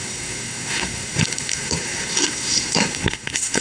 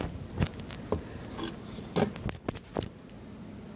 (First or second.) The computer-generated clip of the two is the first